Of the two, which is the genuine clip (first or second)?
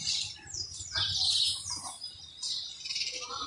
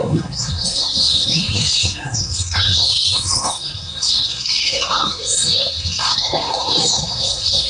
first